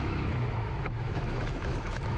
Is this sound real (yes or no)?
no